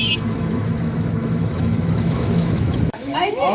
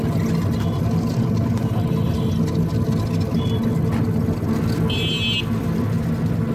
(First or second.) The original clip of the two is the second